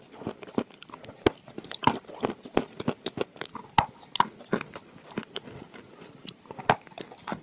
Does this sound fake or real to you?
real